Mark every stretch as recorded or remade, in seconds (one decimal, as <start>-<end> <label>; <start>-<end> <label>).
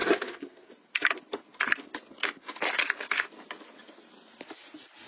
0.0-0.7 remade; 0.7-5.1 recorded